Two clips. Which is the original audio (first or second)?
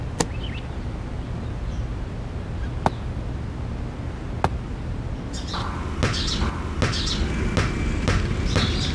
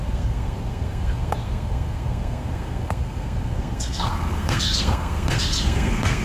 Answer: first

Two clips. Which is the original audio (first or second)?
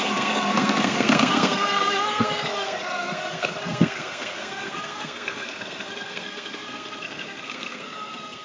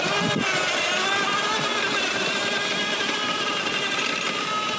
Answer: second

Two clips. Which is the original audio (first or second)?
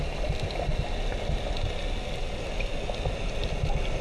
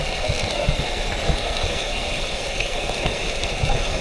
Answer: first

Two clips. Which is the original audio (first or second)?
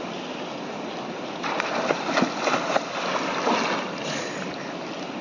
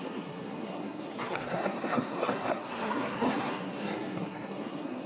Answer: first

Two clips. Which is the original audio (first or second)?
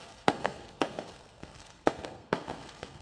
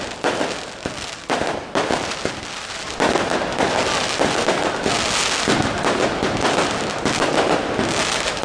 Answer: second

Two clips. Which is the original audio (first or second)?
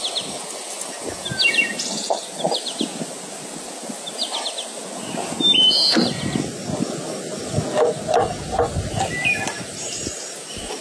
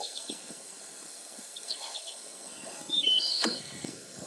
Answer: first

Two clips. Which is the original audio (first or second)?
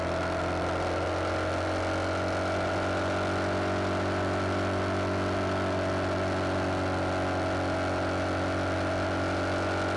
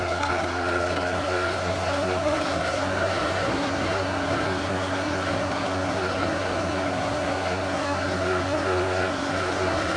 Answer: first